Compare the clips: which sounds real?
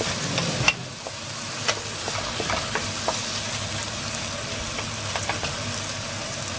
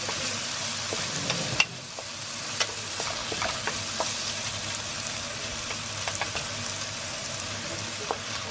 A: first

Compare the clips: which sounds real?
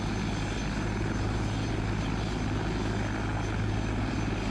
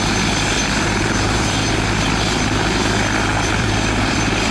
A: first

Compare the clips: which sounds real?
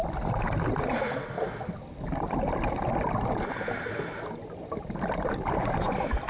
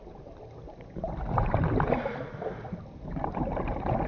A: first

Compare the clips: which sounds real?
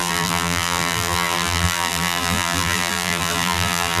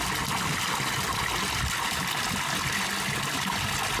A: second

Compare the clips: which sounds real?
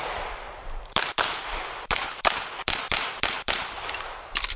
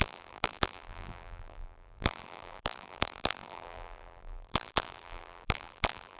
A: first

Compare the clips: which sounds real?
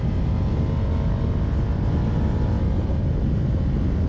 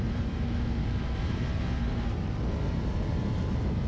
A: first